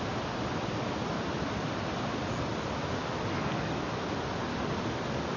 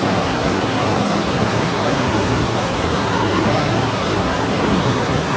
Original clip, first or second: first